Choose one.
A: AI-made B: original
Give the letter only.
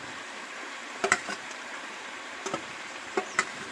A